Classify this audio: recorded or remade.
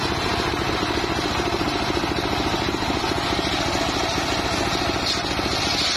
recorded